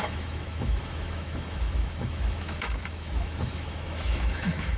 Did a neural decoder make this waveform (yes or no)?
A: yes